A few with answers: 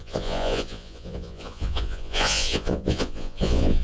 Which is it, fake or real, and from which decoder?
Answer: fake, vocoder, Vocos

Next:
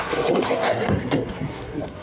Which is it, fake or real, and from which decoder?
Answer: fake, codec, SNAC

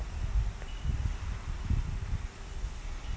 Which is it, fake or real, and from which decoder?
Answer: real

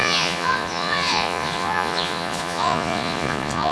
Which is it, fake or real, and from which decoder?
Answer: fake, vocoder, Vocos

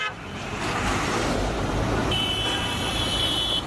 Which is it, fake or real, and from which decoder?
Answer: fake, vocoder, BigVGAN v2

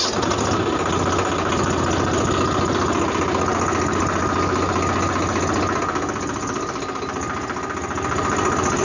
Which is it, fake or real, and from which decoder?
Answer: real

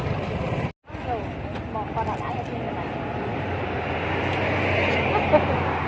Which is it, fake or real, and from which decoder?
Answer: real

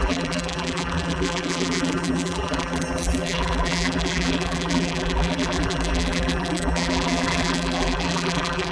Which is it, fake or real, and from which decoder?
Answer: fake, vocoder, BigVGAN v2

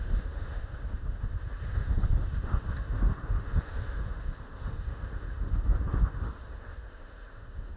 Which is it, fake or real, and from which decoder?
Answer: fake, autoencoder, DAC-VAE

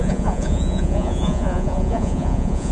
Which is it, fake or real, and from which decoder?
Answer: fake, vocoder, Vocos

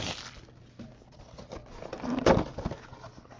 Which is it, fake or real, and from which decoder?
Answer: real